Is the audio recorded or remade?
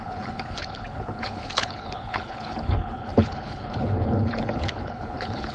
remade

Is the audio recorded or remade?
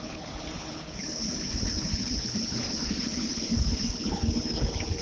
remade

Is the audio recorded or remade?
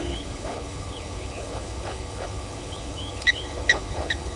remade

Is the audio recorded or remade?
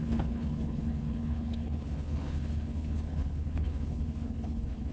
remade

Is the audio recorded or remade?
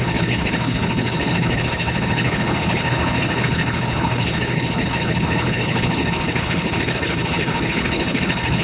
remade